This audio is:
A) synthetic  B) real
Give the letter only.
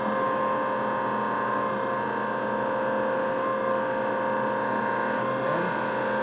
B